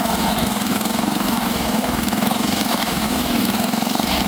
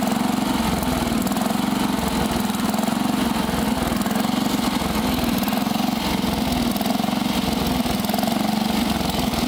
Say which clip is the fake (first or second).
first